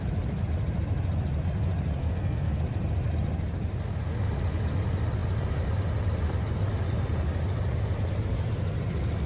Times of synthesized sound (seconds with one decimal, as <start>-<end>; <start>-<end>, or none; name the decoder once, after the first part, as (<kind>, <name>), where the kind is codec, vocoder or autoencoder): 2.0-2.6 (codec, SNAC)